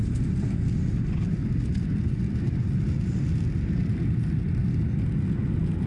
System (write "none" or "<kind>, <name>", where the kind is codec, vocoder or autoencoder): none